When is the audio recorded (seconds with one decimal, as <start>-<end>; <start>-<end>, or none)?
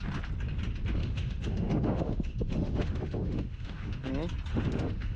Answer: 0.0-1.0; 4.1-4.5